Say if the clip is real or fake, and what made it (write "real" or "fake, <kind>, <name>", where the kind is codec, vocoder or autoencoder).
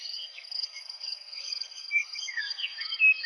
fake, codec, SNAC